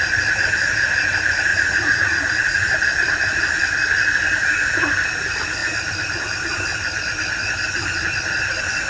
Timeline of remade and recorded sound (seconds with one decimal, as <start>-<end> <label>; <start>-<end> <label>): 0.0-1.5 recorded; 1.5-2.7 remade; 2.7-8.9 recorded